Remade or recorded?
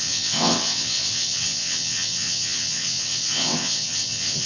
remade